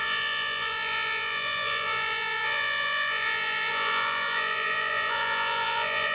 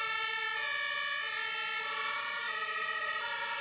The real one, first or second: second